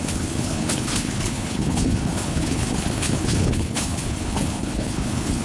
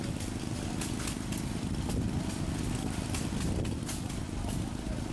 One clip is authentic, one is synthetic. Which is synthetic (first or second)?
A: first